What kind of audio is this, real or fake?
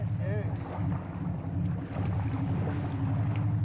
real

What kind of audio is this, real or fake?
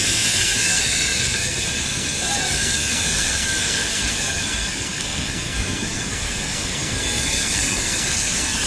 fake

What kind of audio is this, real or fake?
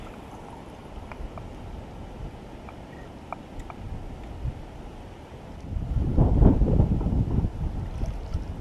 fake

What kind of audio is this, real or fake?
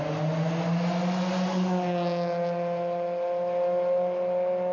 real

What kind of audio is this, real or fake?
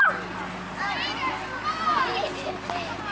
real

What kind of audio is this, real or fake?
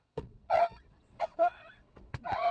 fake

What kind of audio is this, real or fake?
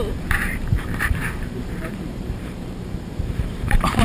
fake